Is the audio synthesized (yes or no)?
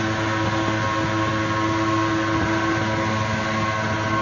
no